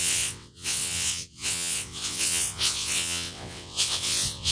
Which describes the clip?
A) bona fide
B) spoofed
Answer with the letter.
B